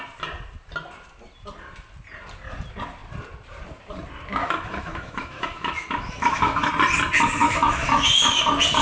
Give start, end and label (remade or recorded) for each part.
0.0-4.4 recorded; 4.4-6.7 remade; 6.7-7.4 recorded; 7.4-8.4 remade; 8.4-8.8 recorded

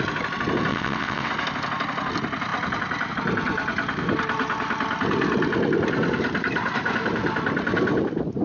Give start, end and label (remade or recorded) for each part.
0.0-0.7 recorded; 0.7-1.3 remade; 1.3-8.4 recorded

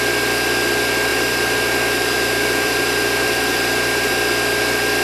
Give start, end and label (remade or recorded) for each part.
0.0-1.1 recorded; 1.1-4.1 remade; 4.1-5.0 recorded

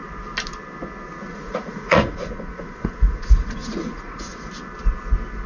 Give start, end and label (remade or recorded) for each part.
0.0-1.3 recorded; 1.3-4.5 remade; 4.5-5.5 recorded

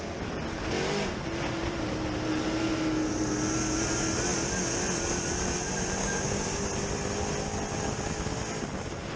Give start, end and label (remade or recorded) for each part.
0.0-6.0 recorded; 6.0-6.7 remade; 6.7-9.2 recorded

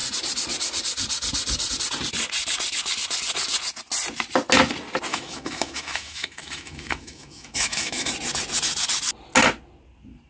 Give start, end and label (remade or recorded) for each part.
0.0-5.1 recorded; 5.1-8.1 remade; 8.1-10.3 recorded

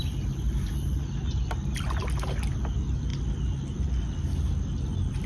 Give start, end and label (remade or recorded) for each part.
0.0-5.3 recorded

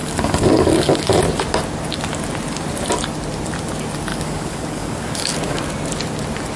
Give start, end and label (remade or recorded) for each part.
0.0-1.2 remade; 1.2-4.1 recorded; 4.1-5.6 remade; 5.6-6.6 recorded